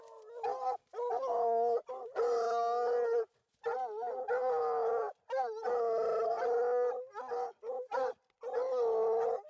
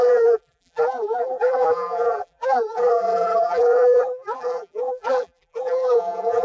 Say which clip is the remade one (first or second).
second